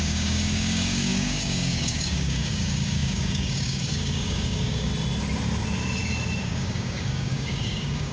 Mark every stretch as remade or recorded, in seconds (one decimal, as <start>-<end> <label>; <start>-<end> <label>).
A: 0.0-4.9 remade; 4.9-6.4 recorded; 6.4-8.1 remade